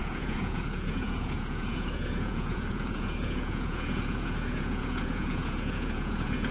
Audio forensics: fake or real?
fake